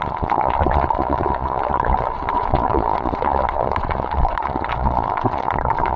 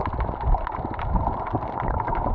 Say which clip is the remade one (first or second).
first